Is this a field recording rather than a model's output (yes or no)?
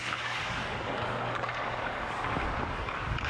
no